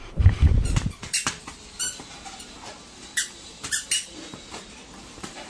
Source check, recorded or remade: remade